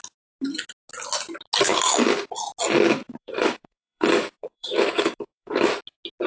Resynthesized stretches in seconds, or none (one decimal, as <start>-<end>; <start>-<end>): 3.0-5.7